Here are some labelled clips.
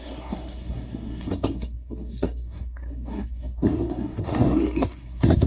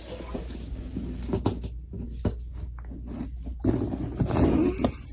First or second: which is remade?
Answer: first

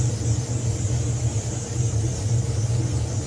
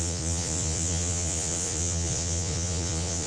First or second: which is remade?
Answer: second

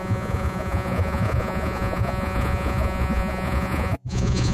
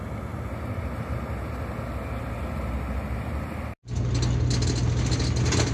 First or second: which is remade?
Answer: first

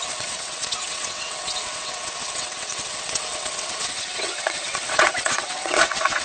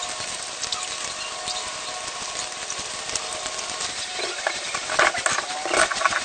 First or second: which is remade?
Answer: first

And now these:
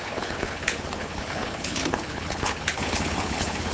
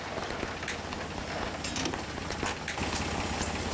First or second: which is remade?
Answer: first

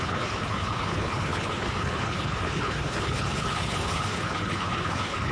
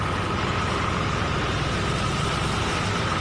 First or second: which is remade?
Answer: first